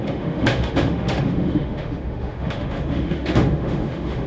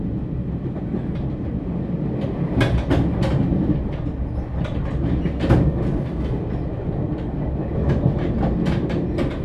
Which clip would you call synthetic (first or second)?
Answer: first